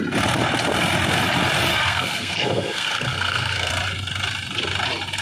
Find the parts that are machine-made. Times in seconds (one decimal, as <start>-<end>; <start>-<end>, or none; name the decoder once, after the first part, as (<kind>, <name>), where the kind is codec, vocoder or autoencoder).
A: 1.7-3.7 (codec, SNAC)